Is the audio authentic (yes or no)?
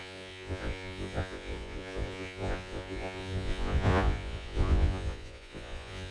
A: no